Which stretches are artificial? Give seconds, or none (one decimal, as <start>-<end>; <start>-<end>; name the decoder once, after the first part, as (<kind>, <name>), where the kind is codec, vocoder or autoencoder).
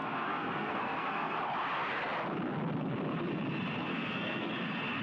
0.0-1.4 (codec, SNAC); 3.9-4.5